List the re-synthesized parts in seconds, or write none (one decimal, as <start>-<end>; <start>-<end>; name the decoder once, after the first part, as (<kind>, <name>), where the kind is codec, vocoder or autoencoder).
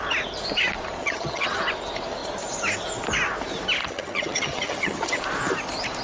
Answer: 1.0-1.6 (vocoder, HiFi-GAN); 3.8-5.2